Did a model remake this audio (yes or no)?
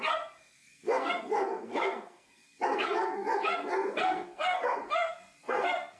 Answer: yes